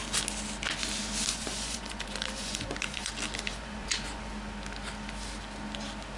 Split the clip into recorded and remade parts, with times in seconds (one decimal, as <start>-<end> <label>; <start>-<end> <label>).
0.0-1.3 recorded; 1.3-3.1 remade; 3.1-3.5 recorded; 3.5-4.3 remade; 4.3-6.2 recorded